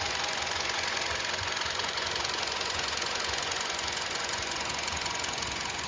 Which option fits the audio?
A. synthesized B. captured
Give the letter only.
A